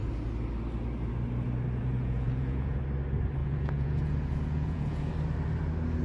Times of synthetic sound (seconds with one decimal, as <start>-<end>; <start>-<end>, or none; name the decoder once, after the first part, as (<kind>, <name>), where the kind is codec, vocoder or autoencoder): 1.8-2.8 (vocoder, Vocos); 3.4-5.1